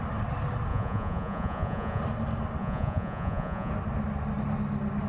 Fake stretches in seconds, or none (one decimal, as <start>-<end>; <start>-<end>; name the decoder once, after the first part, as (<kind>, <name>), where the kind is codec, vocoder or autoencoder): 0.7-2.0 (vocoder, Vocos); 2.6-3.7

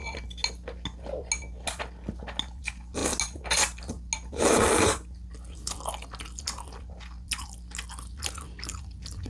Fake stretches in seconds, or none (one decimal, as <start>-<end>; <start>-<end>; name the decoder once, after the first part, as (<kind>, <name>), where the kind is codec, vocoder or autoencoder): none

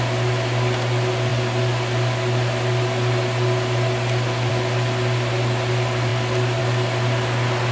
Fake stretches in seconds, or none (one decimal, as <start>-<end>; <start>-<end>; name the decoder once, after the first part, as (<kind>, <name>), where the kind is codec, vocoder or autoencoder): none